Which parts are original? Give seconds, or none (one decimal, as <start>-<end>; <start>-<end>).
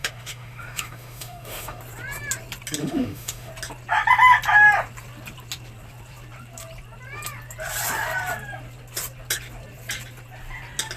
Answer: 1.8-2.8; 3.5-11.0